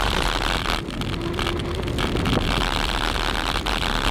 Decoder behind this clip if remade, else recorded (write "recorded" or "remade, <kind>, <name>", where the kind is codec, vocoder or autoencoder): recorded